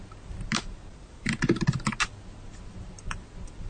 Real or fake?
real